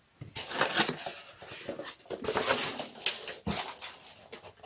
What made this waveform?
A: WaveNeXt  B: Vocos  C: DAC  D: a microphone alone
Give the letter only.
D